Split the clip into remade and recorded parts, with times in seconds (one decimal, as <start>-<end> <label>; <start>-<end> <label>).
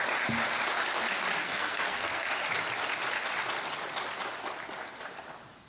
0.0-1.4 recorded; 1.4-2.3 remade; 2.3-5.7 recorded